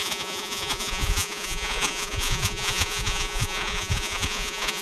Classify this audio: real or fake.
fake